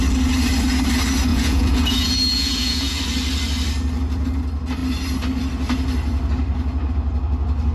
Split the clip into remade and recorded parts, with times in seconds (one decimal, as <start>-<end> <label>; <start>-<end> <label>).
0.0-1.3 recorded; 1.3-3.0 remade; 3.0-7.7 recorded